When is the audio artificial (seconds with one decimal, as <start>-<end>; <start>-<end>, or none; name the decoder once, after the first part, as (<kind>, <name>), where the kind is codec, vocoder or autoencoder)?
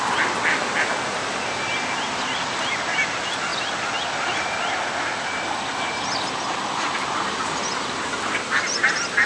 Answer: none